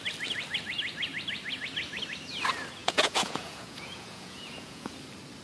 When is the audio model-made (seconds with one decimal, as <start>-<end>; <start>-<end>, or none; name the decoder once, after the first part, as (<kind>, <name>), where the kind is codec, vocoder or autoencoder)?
2.8-5.0 (vocoder, Vocos)